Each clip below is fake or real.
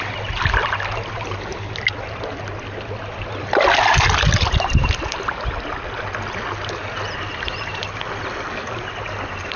real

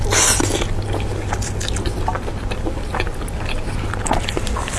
real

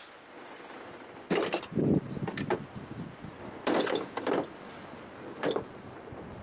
real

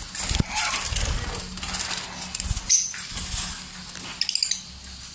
real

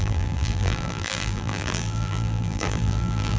fake